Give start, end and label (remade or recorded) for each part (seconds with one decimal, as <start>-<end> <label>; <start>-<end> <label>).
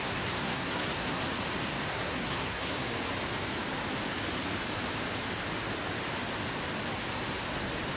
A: 0.0-1.2 remade; 1.2-1.9 recorded; 1.9-2.9 remade; 2.9-8.0 recorded